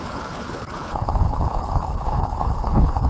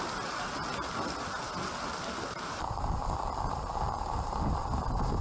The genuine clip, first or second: second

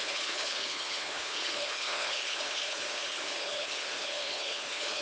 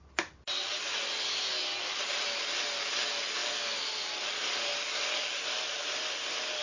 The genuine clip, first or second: second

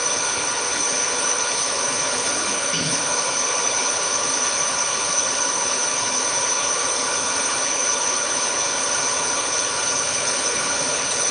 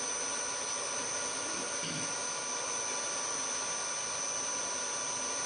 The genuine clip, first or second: second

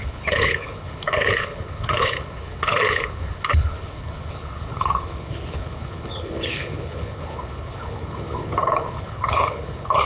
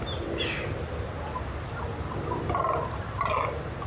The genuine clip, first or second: second